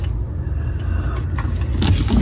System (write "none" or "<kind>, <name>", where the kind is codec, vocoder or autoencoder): none